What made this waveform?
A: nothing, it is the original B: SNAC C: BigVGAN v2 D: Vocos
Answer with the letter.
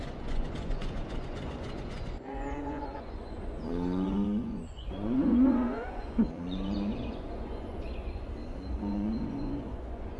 D